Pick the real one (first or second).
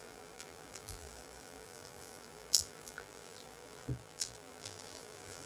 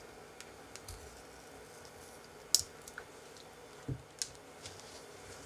second